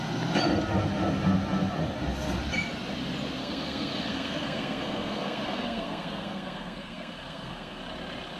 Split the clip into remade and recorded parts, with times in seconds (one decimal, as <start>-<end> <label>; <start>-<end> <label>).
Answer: 0.0-3.4 recorded; 3.4-7.8 remade; 7.8-8.4 recorded